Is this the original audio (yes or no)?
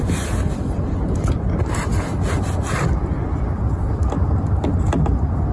yes